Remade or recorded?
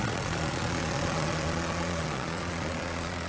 remade